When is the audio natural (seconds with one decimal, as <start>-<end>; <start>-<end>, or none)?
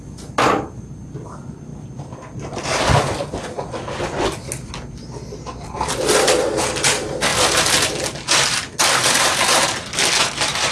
0.0-10.7